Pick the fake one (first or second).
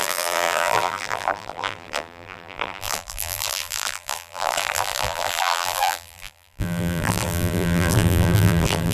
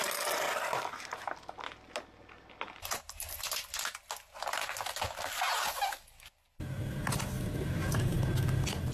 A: first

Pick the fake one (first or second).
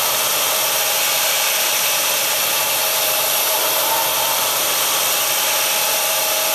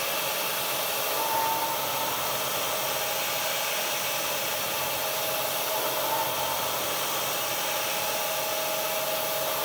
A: first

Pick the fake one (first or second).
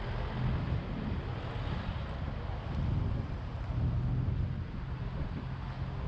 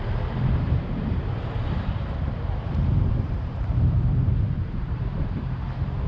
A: second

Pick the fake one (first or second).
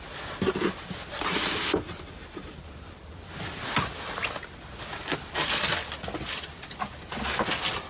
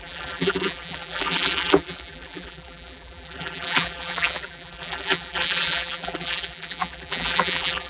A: second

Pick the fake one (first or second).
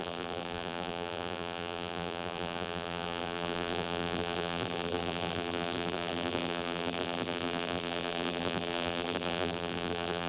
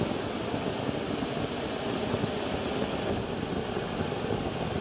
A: first